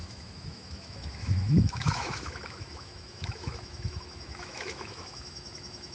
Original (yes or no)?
no